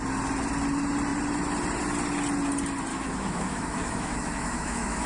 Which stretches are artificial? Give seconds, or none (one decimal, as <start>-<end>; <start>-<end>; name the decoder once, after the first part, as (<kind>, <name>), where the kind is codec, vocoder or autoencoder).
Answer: 2.9-5.1 (autoencoder, DAC-VAE)